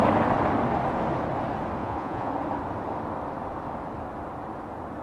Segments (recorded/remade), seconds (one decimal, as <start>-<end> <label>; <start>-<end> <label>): 0.0-1.8 recorded; 1.8-2.3 remade; 2.3-5.0 recorded